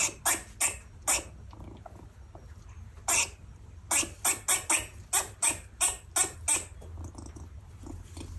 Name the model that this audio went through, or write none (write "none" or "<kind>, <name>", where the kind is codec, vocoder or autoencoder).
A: none